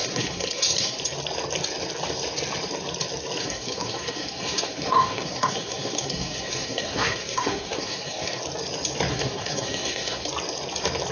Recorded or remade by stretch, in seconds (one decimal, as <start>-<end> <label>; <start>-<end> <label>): 0.0-1.0 remade; 1.0-3.4 recorded; 3.4-8.4 remade; 8.4-9.1 recorded; 9.1-10.3 remade; 10.3-11.1 recorded